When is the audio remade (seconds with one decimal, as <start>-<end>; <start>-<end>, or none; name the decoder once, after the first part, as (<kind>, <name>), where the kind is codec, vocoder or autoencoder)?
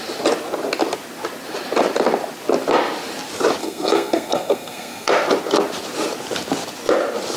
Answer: 3.6-5.1 (codec, SNAC)